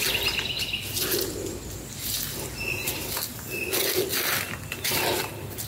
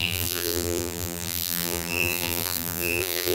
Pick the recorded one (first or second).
first